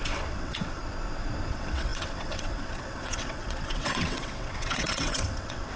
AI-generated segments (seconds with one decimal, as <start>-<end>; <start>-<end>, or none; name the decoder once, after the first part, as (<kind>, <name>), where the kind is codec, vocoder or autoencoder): 0.0-0.8 (vocoder, WaveNeXt); 1.5-5.8